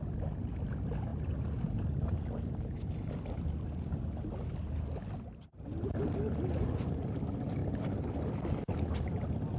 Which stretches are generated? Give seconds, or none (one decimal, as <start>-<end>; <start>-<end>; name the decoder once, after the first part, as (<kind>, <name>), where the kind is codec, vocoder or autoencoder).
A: none